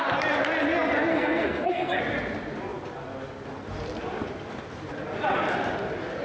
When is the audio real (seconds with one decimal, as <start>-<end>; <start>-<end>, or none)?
0.0-1.1; 2.0-6.2